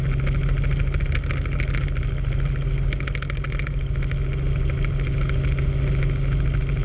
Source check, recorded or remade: recorded